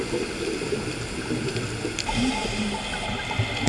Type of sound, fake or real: real